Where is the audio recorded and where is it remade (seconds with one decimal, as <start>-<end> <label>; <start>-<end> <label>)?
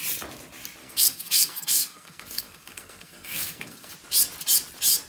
0.0-0.8 recorded; 0.8-3.9 remade; 3.9-5.1 recorded